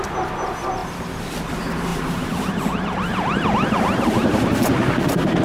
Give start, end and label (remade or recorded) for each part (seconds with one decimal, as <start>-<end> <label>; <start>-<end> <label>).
0.0-1.9 recorded; 1.9-5.4 remade